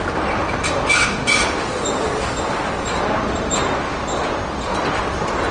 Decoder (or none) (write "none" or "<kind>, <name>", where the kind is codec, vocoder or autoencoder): none